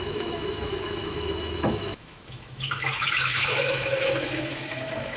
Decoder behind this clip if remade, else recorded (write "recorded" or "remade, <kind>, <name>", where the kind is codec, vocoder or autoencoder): remade, autoencoder, DAC-VAE